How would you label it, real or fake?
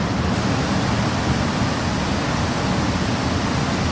real